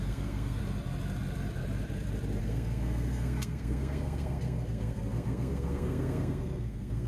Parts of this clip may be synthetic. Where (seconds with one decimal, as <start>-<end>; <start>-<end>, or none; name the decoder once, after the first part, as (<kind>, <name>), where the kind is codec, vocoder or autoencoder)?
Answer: 0.0-0.6 (codec, SNAC); 2.4-7.1